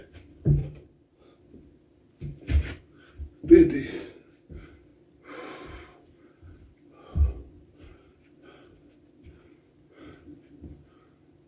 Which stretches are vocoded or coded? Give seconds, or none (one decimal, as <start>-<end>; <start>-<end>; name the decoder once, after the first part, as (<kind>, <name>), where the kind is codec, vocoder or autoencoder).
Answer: 0.6-1.2 (vocoder, BigVGAN v2); 4.9-9.4